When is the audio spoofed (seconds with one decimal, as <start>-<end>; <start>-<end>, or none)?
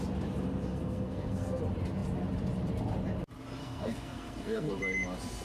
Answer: 0.7-1.6; 3.6-4.7